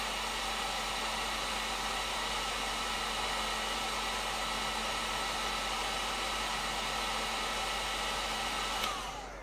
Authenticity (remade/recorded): recorded